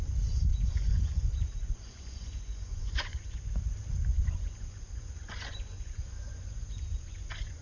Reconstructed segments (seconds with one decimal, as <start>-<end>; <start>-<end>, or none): 0.5-3.5; 4.1-7.6